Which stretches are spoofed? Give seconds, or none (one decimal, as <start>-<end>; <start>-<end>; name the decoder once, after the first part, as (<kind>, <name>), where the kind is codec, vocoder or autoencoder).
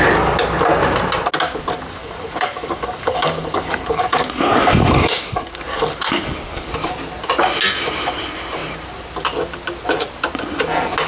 2.0-6.7 (codec, DAC)